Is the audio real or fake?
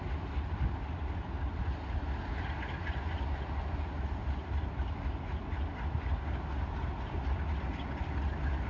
real